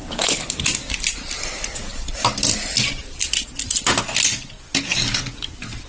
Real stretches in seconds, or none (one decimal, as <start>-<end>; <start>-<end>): 0.5-5.9